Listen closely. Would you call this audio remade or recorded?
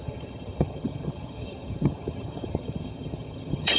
remade